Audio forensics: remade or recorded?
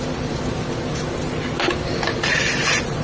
recorded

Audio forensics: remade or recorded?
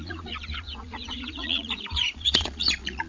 remade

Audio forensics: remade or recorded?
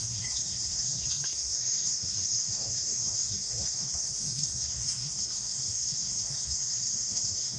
remade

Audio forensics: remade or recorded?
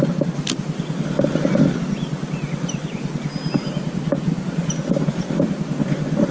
recorded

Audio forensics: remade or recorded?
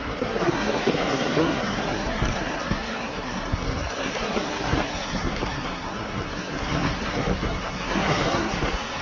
remade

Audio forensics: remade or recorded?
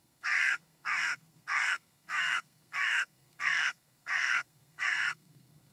remade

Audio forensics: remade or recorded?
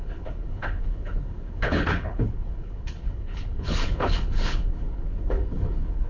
remade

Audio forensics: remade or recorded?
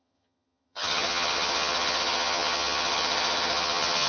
remade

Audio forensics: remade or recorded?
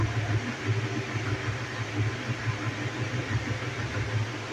recorded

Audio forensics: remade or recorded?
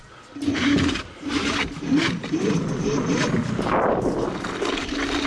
recorded